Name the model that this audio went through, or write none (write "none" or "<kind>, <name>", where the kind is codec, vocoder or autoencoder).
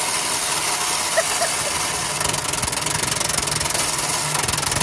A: none